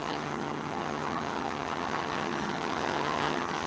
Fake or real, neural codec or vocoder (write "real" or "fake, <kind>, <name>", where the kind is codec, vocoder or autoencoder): fake, vocoder, HiFi-GAN